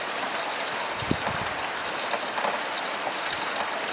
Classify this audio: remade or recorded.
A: recorded